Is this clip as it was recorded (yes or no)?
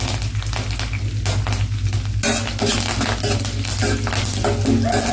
yes